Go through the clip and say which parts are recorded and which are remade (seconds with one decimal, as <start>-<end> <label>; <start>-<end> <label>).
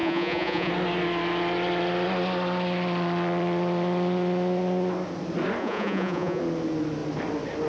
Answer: 0.0-0.7 remade; 0.7-5.6 recorded; 5.6-6.4 remade; 6.4-7.7 recorded